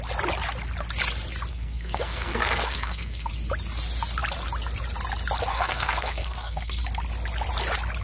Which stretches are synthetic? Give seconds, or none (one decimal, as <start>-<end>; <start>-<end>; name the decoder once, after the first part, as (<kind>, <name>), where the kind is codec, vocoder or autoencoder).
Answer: 1.5-3.3 (codec, SNAC); 5.5-6.8

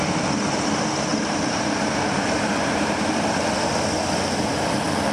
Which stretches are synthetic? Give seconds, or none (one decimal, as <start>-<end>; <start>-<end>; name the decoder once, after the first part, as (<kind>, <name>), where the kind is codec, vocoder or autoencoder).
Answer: 1.1-3.3 (vocoder, BigVGAN v2)

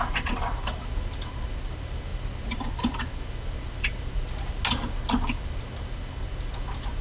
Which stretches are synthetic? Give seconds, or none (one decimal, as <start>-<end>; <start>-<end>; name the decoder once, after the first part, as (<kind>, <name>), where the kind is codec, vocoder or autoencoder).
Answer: none

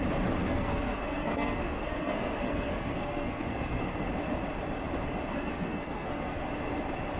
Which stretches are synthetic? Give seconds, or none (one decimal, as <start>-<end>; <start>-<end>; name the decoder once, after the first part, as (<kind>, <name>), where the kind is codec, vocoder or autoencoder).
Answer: 0.4-4.1 (codec, SNAC); 5.3-6.4

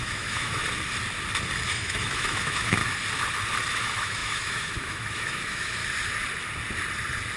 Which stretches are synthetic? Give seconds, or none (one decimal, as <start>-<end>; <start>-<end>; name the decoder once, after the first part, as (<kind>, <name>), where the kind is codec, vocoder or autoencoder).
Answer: 0.0-0.6 (autoencoder, DAC-VAE); 1.7-2.8; 3.7-5.8

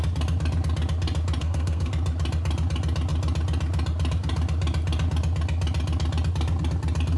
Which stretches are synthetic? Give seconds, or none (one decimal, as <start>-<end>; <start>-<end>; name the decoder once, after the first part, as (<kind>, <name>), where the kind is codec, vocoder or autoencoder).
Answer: 1.4-1.9 (codec, SNAC)

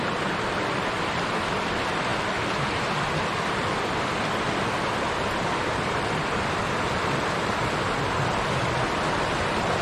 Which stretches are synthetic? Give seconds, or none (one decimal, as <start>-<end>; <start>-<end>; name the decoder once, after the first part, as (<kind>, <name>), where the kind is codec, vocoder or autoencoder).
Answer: none